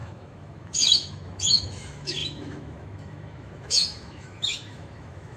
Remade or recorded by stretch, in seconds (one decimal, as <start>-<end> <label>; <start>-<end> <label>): 0.0-5.4 remade